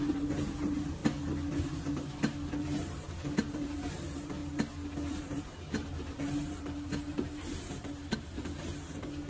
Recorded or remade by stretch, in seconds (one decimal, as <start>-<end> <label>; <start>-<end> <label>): 0.0-1.0 remade; 1.0-2.5 recorded; 2.5-4.4 remade; 4.4-5.1 recorded; 5.1-8.0 remade; 8.0-8.6 recorded; 8.6-9.3 remade